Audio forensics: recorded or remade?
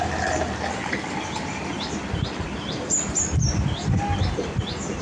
recorded